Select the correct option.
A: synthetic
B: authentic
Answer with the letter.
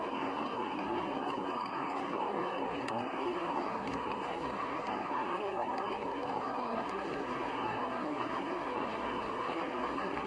A